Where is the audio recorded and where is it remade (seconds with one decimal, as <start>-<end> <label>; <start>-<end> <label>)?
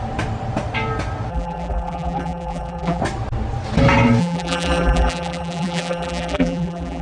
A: 0.0-1.3 recorded; 1.3-3.0 remade; 3.0-4.2 recorded; 4.2-7.0 remade